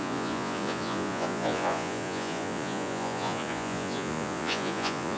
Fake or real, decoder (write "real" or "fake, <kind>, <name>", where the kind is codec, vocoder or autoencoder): fake, vocoder, Vocos